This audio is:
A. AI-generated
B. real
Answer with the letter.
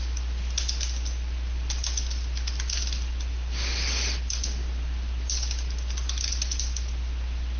B